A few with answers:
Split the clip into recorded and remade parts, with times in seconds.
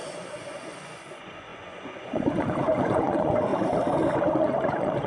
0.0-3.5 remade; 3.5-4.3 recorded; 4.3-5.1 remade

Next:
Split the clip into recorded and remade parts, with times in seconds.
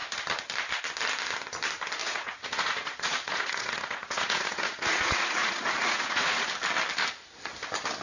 0.0-2.0 recorded; 2.0-6.5 remade; 6.5-8.0 recorded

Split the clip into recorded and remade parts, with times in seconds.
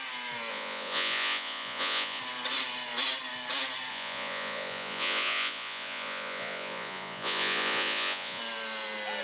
0.0-0.5 recorded; 0.5-2.2 remade; 2.2-3.9 recorded; 3.9-8.4 remade; 8.4-9.2 recorded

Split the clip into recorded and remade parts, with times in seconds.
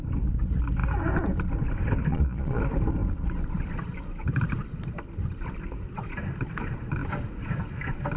0.0-2.1 recorded; 2.1-2.6 remade; 2.6-8.2 recorded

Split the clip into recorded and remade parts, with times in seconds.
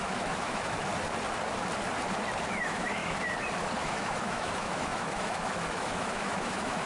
0.0-0.9 remade; 0.9-2.5 recorded; 2.5-3.0 remade; 3.0-3.8 recorded; 3.8-6.9 remade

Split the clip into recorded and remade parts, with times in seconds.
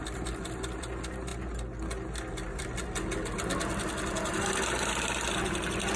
0.0-6.0 recorded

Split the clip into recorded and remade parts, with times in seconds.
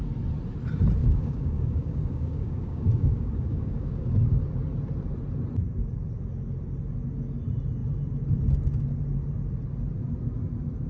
0.0-1.0 recorded; 1.0-4.4 remade; 4.4-10.9 recorded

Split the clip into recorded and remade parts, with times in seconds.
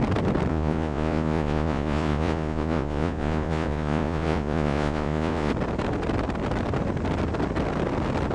0.0-0.5 recorded; 0.5-5.5 remade; 5.5-8.3 recorded